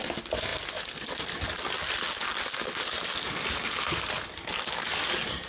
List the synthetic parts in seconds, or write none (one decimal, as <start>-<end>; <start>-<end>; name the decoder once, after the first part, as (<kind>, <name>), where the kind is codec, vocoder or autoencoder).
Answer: none